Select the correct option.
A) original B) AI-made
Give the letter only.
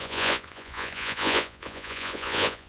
B